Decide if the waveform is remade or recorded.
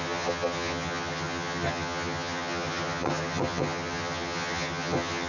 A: remade